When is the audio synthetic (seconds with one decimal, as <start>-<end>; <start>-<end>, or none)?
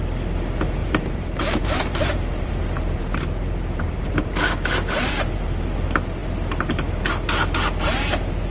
0.8-5.1